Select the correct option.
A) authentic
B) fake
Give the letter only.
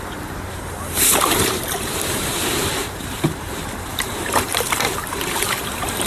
B